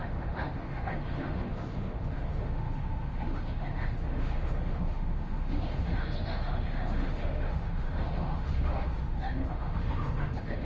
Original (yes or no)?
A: no